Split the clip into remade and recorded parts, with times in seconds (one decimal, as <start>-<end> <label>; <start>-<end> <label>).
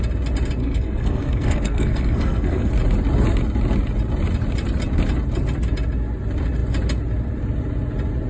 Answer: 0.0-0.6 recorded; 0.6-2.7 remade; 2.7-8.3 recorded